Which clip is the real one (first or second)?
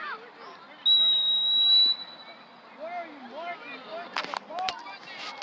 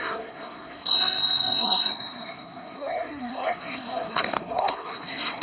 first